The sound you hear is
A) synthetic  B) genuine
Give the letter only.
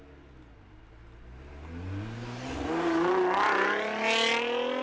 B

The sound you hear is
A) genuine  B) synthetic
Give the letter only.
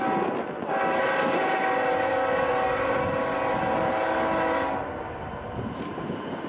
A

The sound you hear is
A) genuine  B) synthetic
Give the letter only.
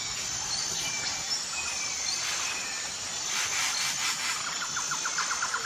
A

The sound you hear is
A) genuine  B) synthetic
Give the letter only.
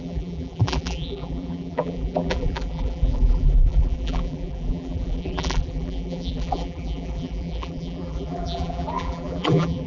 B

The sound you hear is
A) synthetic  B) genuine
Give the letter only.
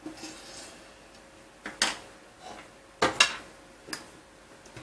B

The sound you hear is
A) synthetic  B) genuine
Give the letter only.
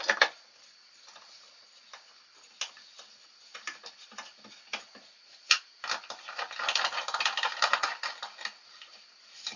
B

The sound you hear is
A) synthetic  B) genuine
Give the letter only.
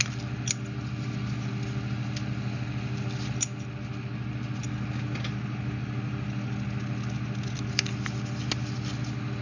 B